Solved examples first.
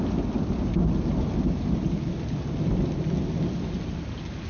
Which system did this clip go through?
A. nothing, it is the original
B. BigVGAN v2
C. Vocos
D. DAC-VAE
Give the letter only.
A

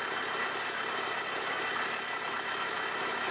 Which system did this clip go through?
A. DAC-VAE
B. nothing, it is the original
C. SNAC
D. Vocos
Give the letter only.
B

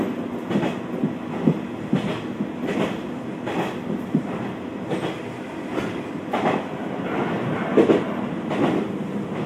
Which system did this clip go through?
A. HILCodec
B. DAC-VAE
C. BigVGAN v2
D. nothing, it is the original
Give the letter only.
D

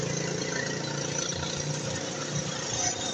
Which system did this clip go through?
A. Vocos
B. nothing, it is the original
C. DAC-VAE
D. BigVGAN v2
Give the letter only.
B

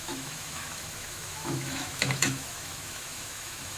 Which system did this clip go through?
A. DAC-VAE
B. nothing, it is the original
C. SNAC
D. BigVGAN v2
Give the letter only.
A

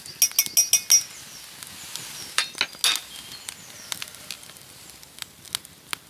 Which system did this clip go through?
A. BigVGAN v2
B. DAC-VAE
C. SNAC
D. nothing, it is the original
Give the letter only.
D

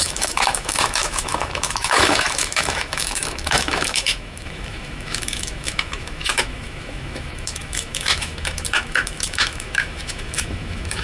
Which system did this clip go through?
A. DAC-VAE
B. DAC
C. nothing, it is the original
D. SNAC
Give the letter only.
A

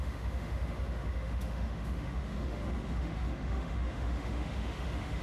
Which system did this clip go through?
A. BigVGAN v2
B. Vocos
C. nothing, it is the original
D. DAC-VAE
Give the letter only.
D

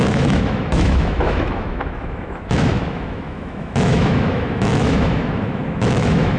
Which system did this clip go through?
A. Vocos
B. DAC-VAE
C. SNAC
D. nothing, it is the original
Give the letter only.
B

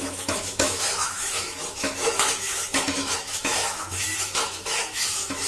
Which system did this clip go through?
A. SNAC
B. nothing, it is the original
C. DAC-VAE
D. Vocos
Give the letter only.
C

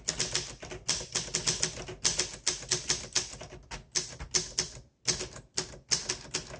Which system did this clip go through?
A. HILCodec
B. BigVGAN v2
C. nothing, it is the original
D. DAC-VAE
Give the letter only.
C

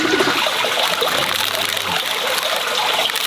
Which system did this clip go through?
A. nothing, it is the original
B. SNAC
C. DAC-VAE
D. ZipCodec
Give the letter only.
A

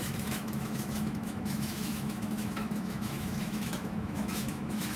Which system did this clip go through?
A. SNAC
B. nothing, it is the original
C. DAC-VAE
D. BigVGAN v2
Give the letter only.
C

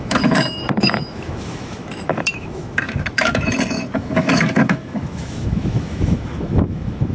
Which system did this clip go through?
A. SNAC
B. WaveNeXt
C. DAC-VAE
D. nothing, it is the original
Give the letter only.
C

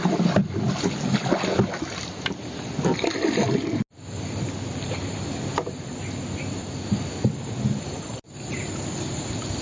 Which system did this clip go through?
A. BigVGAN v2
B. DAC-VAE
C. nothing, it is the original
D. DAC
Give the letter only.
C